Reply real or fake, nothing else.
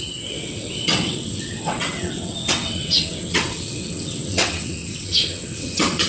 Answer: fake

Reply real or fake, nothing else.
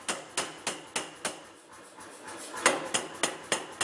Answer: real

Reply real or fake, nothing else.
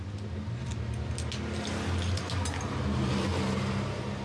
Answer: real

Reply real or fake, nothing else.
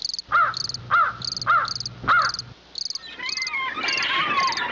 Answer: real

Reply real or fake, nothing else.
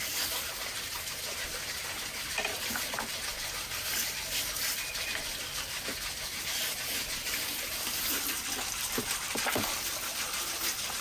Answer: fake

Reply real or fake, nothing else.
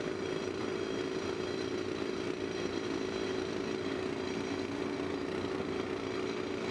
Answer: real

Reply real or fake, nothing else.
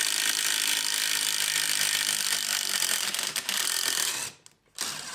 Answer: real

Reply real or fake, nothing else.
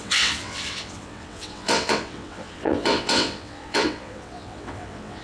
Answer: fake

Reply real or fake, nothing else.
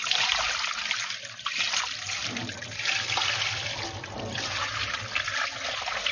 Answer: real